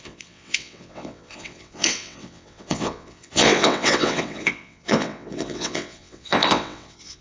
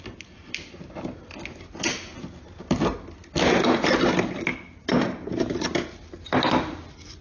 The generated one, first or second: first